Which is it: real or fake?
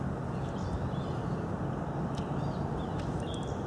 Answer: real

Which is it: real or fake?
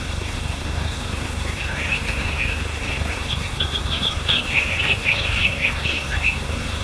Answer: fake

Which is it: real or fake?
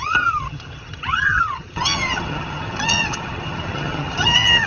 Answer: fake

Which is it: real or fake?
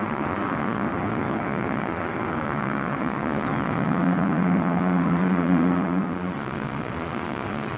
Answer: fake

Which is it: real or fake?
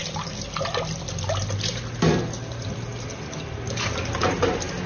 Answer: real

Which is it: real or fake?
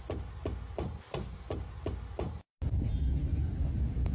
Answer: real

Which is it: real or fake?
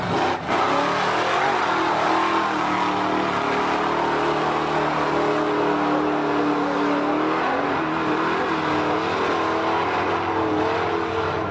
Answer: real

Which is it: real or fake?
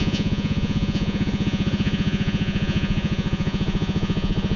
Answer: fake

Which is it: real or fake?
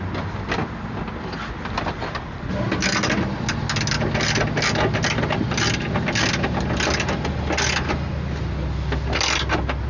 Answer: real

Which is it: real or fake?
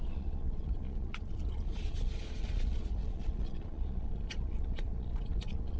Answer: fake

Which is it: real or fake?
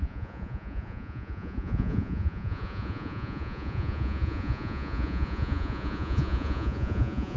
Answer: fake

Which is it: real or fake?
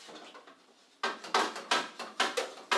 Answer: real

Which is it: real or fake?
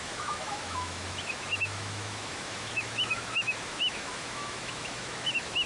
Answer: fake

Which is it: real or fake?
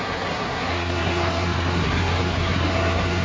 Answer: fake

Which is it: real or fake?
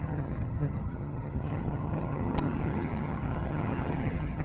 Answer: fake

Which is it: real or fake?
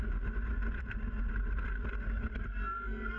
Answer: real